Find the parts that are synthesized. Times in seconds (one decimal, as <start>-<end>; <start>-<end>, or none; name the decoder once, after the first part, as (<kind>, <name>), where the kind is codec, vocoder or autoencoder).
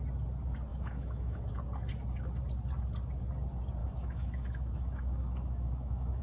0.7-1.5 (autoencoder, DAC-VAE); 3.8-6.2